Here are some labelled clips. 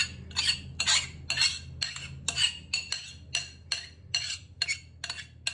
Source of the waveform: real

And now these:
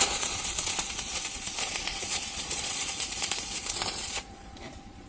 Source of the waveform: fake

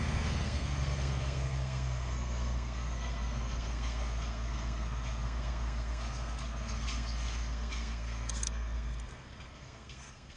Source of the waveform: fake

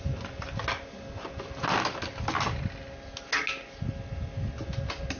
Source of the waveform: real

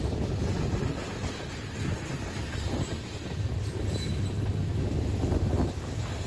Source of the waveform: real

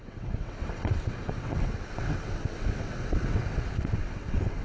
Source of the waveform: fake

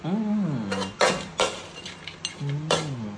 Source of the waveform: real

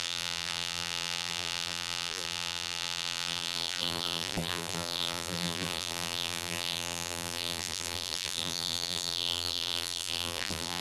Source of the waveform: fake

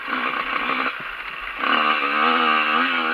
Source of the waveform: real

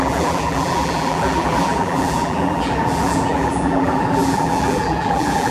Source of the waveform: fake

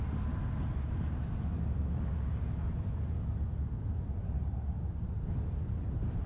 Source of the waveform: real